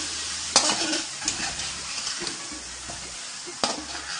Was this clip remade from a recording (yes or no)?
no